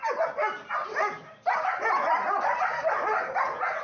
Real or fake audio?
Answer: real